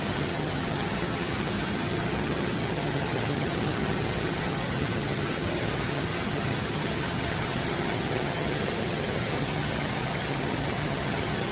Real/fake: fake